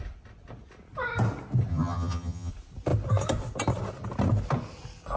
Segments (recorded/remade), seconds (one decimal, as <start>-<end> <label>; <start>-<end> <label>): 0.0-1.7 recorded; 1.7-2.5 remade; 2.5-5.2 recorded